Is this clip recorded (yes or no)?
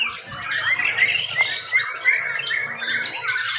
yes